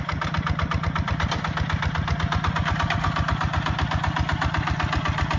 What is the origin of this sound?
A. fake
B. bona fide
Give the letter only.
B